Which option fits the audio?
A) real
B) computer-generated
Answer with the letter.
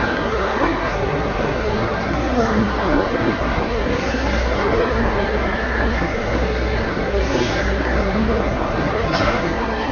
B